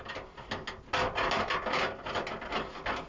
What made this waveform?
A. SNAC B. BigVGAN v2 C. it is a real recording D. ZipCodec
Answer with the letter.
C